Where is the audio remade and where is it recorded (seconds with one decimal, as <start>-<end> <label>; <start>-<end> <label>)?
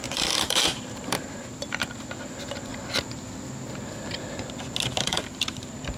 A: 0.0-2.7 remade; 2.7-5.0 recorded; 5.0-6.0 remade